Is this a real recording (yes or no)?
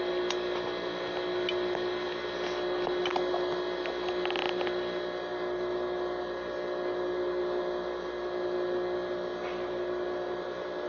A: yes